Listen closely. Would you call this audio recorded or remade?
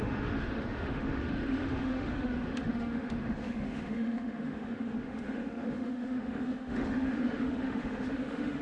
remade